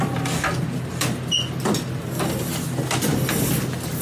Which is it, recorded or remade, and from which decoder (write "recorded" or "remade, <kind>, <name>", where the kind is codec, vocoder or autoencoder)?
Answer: recorded